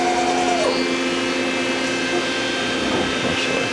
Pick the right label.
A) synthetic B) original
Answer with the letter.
B